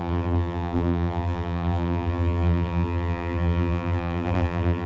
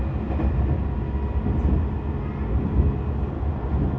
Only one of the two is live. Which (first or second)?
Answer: second